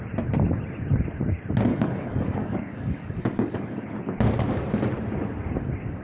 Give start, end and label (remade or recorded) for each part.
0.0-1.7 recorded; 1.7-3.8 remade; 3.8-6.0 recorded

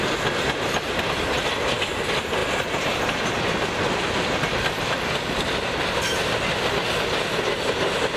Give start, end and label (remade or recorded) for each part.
0.0-8.2 recorded

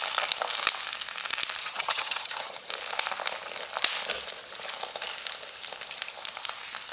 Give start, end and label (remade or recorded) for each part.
0.0-1.6 recorded; 1.6-2.7 remade; 2.7-6.9 recorded